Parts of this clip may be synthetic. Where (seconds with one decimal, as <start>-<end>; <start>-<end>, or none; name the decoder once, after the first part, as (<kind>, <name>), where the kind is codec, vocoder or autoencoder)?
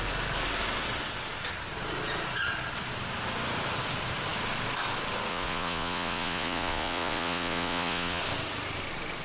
5.3-8.2 (vocoder, Vocos)